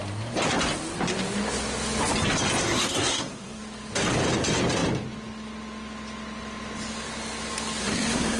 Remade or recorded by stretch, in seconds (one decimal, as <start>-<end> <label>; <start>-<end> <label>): 0.0-2.6 recorded; 2.6-3.6 remade; 3.6-7.8 recorded; 7.8-8.4 remade